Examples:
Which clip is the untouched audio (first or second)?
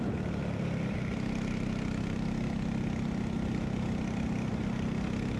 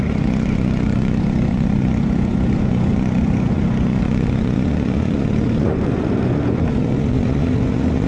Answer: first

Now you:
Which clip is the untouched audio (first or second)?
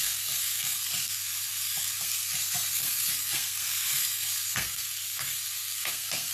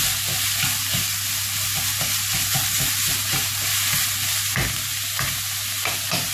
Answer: second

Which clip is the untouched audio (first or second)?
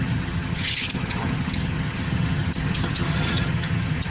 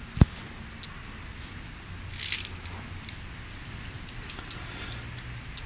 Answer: second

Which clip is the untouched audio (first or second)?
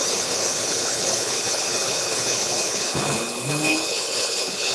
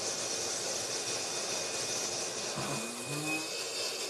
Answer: second